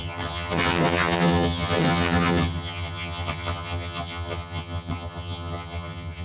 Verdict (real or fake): fake